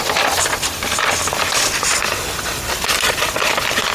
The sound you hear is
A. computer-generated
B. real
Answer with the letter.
B